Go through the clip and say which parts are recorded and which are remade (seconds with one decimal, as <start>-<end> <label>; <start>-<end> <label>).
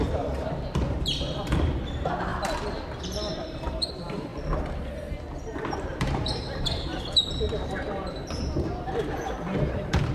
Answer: 0.0-2.3 remade; 2.3-3.3 recorded; 3.3-4.3 remade; 4.3-5.4 recorded; 5.4-10.1 remade